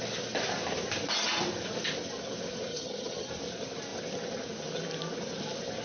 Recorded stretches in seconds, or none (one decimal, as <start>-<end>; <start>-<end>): 0.0-2.7; 3.3-5.8